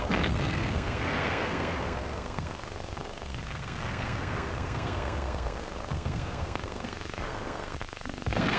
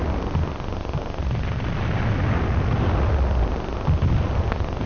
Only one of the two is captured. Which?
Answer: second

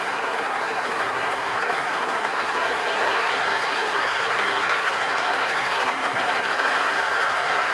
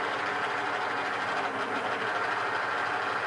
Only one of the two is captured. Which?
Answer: second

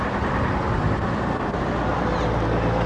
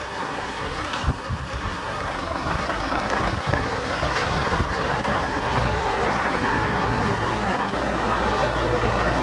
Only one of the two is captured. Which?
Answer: first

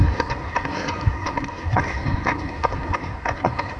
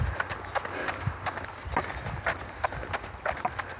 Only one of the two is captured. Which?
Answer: second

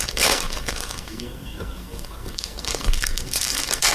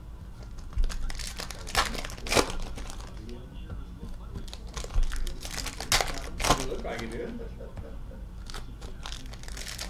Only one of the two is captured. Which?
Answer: second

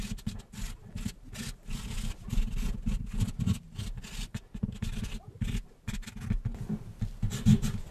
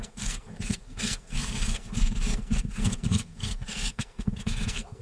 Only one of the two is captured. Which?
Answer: first